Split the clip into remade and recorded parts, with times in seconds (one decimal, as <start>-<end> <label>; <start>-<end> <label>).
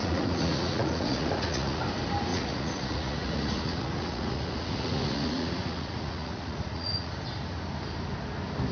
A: 0.0-1.8 remade; 1.8-2.3 recorded; 2.3-7.1 remade; 7.1-8.7 recorded